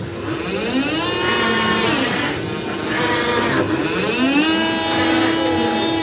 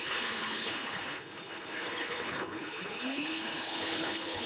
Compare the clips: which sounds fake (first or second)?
second